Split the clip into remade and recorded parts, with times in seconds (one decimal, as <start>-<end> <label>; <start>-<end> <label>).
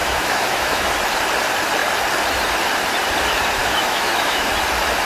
0.0-0.9 remade; 0.9-3.6 recorded; 3.6-4.5 remade; 4.5-5.0 recorded